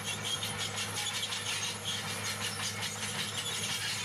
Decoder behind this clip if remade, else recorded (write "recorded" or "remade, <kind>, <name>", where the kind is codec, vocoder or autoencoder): recorded